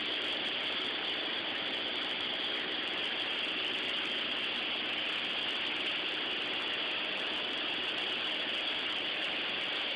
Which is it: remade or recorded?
recorded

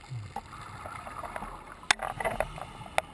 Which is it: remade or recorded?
recorded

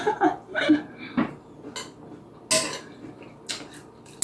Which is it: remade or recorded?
recorded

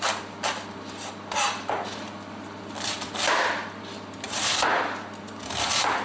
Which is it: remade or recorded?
recorded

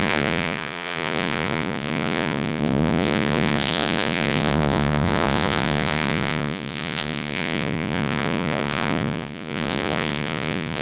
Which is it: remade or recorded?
remade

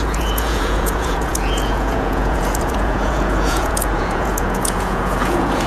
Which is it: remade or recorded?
remade